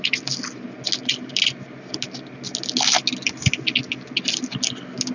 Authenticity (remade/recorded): recorded